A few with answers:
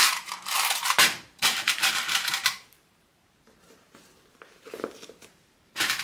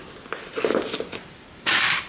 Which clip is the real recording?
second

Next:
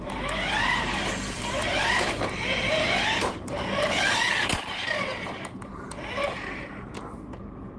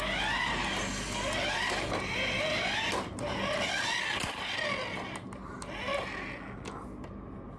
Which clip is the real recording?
second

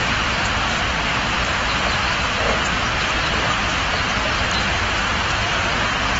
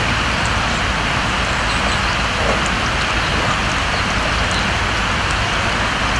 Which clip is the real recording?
second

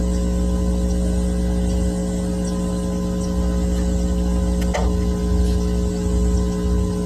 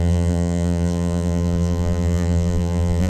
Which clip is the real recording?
first